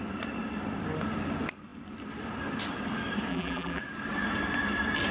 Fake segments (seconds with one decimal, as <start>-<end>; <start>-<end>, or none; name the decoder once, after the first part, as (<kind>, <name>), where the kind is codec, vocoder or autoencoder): 3.3-3.8 (vocoder, BigVGAN v2)